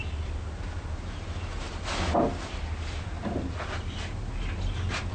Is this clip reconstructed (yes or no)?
no